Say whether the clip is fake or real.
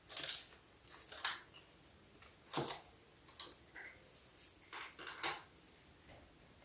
real